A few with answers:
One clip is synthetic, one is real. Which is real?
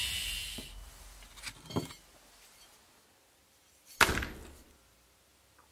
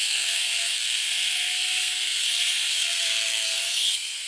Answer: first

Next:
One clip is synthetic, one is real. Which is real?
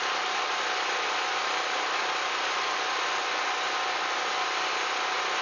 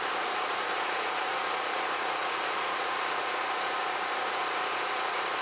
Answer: first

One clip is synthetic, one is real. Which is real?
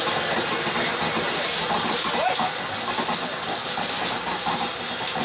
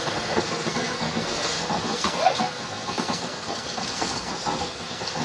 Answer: first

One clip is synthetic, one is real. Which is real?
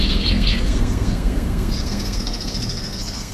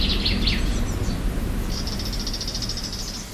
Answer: second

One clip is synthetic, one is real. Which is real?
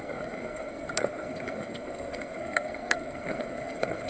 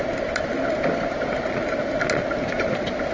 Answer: second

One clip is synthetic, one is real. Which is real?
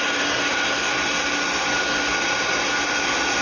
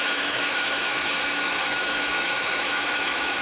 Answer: first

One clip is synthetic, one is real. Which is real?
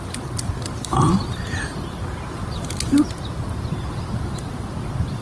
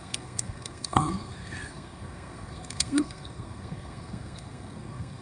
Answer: first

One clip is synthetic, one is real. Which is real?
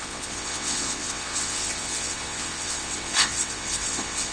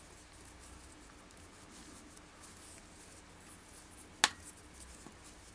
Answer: second